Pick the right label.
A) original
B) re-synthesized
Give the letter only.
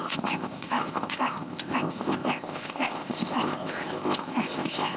B